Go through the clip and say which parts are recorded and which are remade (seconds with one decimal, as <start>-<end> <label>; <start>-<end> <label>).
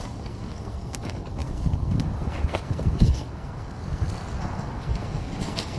0.0-5.8 remade